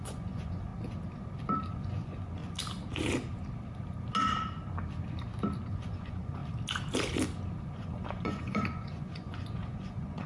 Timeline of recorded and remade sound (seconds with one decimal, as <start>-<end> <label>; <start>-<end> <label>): 0.0-0.7 remade; 0.7-1.7 recorded; 1.7-2.4 remade; 2.4-5.7 recorded; 5.7-6.4 remade; 6.4-7.6 recorded; 7.6-10.3 remade